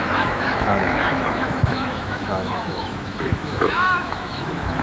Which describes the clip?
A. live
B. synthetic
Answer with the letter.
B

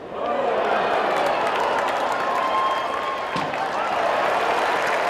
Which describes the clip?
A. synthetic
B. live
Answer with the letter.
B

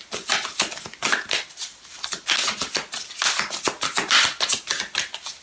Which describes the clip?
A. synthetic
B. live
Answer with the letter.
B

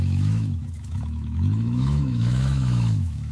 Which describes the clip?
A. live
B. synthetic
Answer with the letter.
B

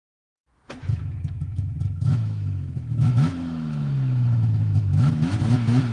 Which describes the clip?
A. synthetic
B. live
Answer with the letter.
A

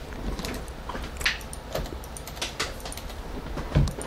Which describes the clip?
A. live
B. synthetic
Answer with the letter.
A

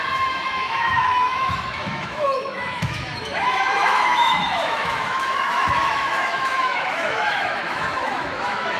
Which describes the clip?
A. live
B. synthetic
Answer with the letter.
B